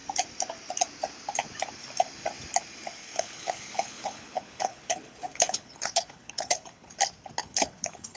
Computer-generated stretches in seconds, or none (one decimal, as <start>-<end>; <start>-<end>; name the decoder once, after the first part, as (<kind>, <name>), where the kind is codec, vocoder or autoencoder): 3.0-7.0 (codec, HILCodec); 7.4-8.2